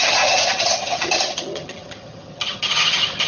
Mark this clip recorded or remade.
remade